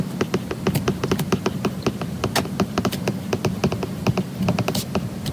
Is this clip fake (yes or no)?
no